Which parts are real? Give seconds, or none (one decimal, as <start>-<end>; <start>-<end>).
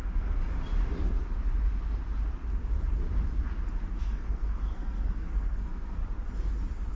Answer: 0.4-4.0; 6.0-6.9